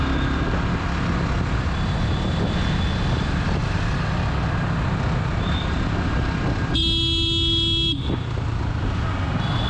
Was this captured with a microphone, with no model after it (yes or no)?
yes